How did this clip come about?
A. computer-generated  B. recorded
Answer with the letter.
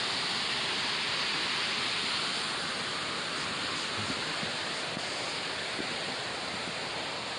B